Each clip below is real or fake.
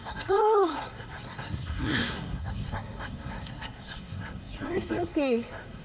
fake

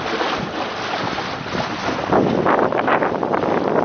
real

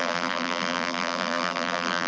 fake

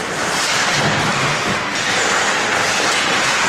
real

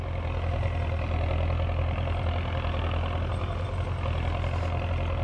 real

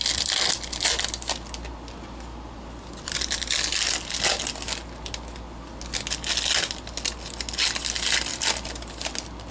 real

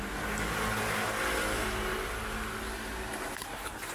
real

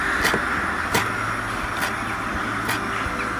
real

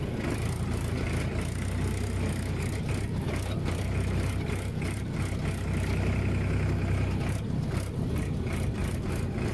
real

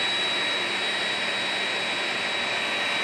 real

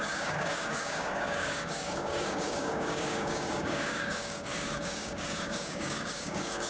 fake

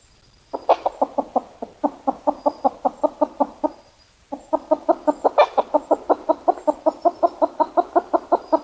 real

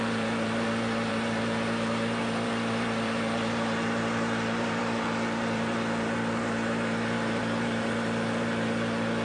fake